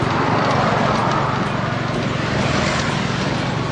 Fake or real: real